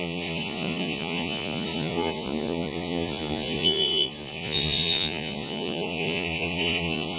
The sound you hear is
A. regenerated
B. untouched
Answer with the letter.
A